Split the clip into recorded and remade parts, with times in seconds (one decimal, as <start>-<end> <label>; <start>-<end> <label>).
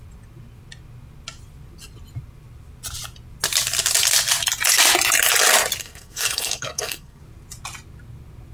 0.0-5.8 recorded; 5.8-7.2 remade; 7.2-8.5 recorded